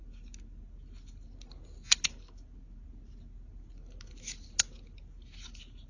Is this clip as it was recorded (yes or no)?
yes